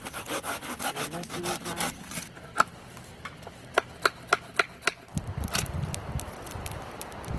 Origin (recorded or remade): recorded